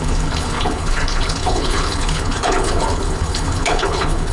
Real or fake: fake